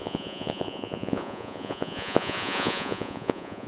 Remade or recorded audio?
remade